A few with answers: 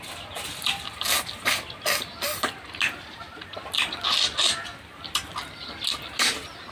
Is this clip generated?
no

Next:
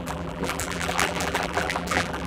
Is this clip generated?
yes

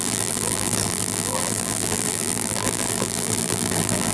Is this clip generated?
yes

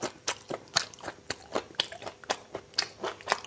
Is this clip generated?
no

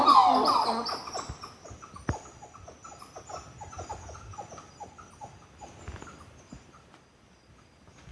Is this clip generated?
no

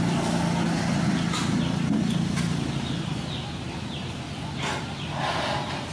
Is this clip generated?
no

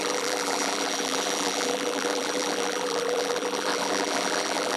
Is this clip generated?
yes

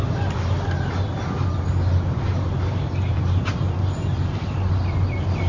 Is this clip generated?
no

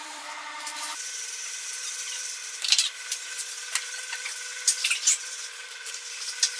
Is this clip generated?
yes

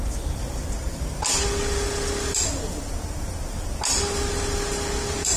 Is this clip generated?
no